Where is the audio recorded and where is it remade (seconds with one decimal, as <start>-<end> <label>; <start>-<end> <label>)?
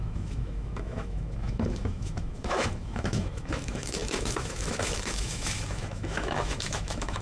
0.0-7.2 remade